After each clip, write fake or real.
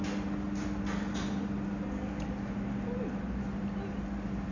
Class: real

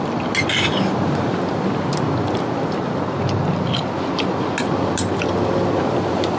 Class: real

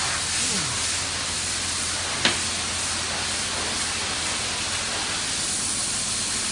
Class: real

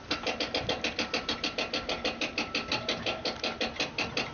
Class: real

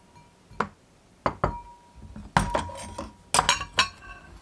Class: real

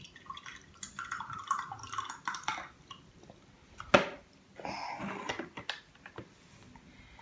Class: real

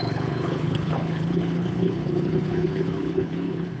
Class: fake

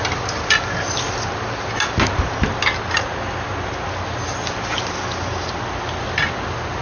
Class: real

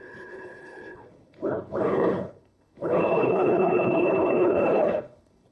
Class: fake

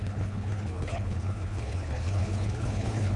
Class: fake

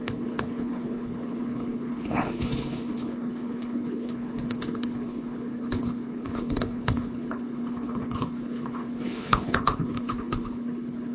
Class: fake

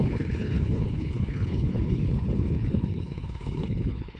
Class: fake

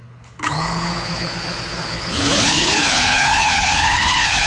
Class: fake